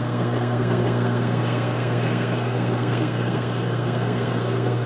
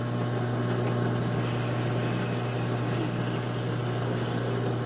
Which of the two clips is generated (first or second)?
first